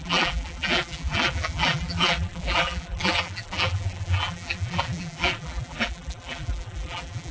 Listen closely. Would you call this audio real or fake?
fake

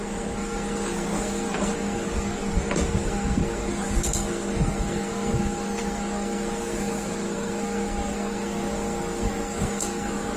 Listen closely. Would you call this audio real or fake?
fake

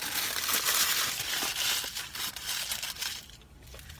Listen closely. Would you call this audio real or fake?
real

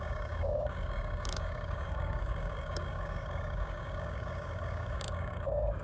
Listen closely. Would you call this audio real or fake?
fake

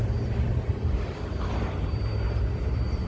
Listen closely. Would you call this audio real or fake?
fake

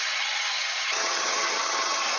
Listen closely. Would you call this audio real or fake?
fake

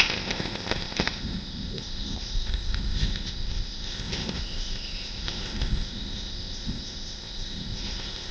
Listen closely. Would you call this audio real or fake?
fake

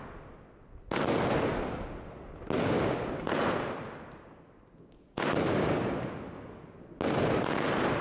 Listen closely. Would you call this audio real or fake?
real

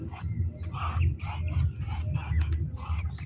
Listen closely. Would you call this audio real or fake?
real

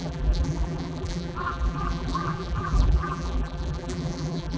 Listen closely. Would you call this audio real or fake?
fake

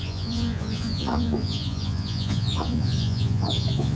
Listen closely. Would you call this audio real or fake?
fake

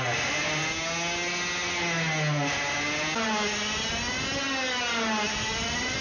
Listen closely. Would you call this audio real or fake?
real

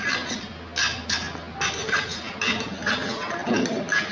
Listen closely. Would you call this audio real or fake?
real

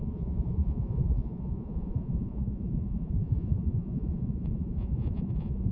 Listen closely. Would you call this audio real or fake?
fake